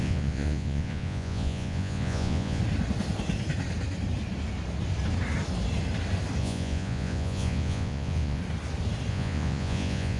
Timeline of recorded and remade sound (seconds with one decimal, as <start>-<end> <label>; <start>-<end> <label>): 0.0-2.6 remade; 2.6-6.4 recorded; 6.4-8.4 remade; 8.4-9.1 recorded; 9.1-10.2 remade